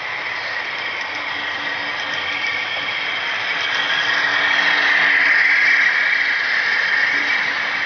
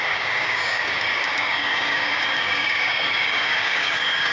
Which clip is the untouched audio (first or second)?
first